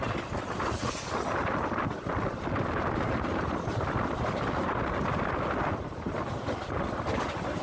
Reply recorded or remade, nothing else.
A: recorded